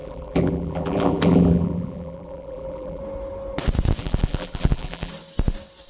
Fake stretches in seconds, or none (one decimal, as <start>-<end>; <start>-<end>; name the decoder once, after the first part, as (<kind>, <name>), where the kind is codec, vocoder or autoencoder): 0.0-3.0 (vocoder, BigVGAN v2); 4.0-5.1